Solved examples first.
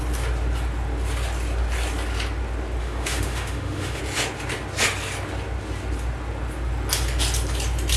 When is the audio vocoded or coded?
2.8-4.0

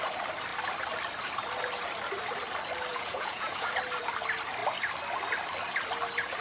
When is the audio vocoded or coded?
2.9-3.7